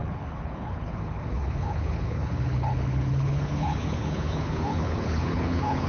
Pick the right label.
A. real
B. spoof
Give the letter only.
B